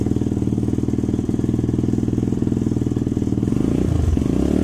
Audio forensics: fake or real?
real